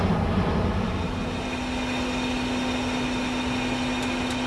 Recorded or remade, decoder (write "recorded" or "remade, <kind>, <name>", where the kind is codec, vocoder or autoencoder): recorded